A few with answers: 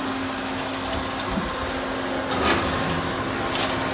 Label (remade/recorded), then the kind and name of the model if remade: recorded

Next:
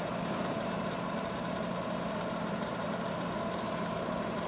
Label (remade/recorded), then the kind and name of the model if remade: remade, vocoder, BigVGAN v2